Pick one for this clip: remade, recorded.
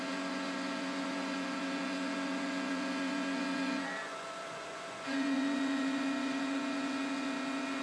remade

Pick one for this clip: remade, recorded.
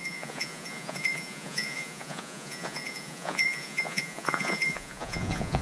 remade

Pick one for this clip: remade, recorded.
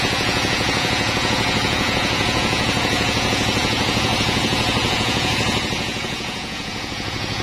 remade